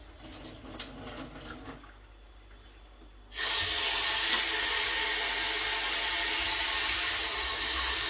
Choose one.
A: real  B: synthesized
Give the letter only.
A